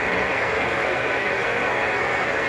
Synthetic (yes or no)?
yes